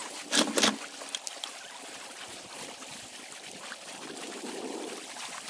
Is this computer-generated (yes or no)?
no